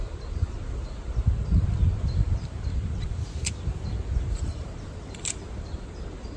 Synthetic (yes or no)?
no